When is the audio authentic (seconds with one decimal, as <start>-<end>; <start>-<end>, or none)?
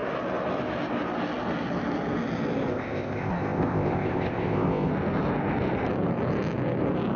0.0-2.7; 4.9-7.2